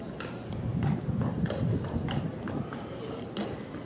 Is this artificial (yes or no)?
no